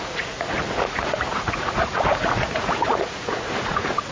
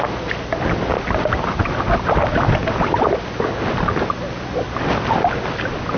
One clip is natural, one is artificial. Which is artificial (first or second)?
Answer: first